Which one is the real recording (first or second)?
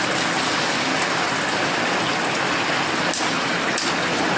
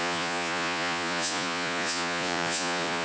first